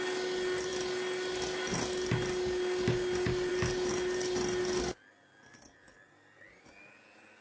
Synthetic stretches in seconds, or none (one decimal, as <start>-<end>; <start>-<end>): none